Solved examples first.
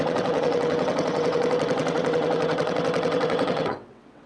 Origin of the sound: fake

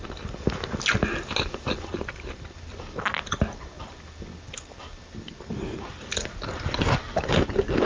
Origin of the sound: real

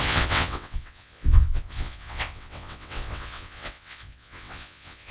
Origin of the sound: fake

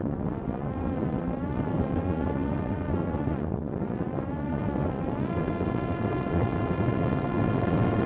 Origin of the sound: fake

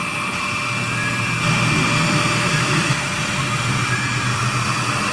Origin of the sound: real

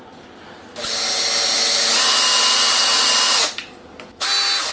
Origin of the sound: real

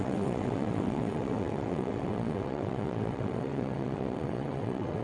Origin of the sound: fake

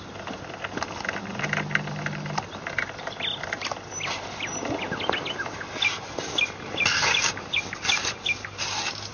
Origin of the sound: real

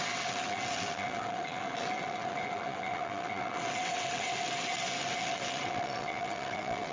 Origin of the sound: fake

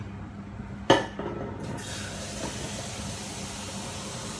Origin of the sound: real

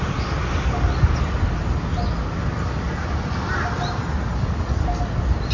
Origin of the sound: real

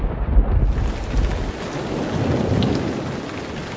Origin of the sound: real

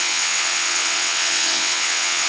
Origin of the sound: fake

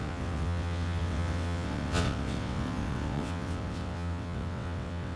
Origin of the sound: fake